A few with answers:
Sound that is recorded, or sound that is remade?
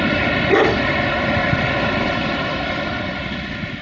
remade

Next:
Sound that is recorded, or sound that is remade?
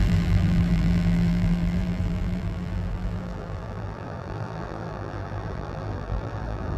remade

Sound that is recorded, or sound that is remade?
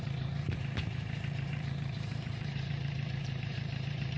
remade